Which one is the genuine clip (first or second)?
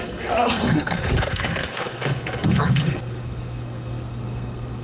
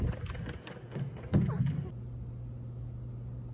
second